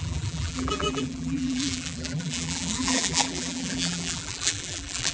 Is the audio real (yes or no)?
no